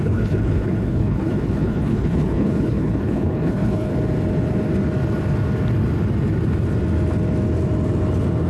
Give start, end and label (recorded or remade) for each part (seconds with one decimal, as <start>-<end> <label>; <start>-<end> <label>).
0.0-3.9 remade; 3.9-8.5 recorded